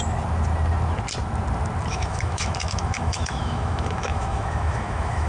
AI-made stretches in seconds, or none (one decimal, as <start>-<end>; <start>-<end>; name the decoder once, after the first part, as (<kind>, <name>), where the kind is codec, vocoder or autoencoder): 1.9-5.3 (autoencoder, DAC-VAE)